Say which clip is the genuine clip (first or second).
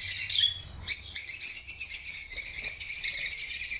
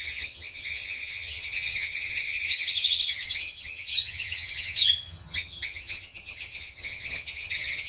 first